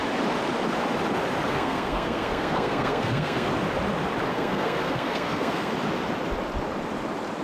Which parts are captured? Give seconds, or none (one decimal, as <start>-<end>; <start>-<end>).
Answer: 0.0-1.5; 3.5-4.3; 5.7-7.4